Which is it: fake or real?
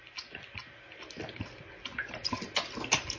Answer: real